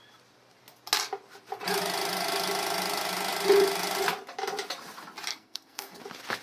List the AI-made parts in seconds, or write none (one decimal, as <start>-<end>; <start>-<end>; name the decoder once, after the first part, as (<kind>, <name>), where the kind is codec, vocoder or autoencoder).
5.3-6.0 (codec, SNAC)